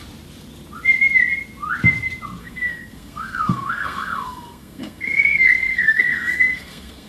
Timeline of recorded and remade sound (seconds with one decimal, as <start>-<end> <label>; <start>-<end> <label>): 0.0-2.4 recorded; 2.4-7.1 remade